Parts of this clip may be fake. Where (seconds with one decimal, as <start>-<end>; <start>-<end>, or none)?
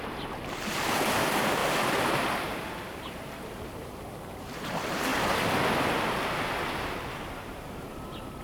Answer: 0.0-1.6; 2.4-5.1; 6.9-8.4